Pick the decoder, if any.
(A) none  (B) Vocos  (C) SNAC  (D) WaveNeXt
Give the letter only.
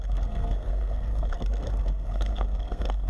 C